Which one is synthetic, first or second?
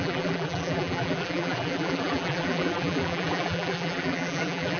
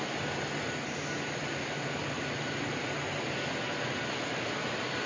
first